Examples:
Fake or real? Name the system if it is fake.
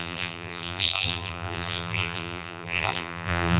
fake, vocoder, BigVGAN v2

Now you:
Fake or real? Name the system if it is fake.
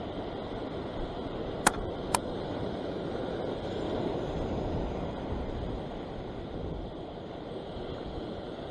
fake, vocoder, BigVGAN v2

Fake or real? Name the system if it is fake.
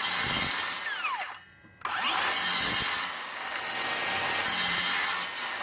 real